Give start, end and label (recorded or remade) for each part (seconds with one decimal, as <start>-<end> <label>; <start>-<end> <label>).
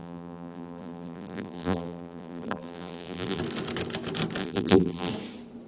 0.0-3.4 remade; 3.4-4.4 recorded; 4.4-5.1 remade; 5.1-5.7 recorded